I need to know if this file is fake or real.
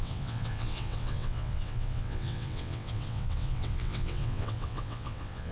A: fake